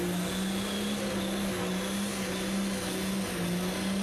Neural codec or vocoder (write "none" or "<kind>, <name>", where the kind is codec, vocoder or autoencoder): none